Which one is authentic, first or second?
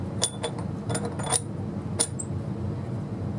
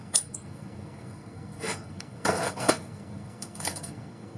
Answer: first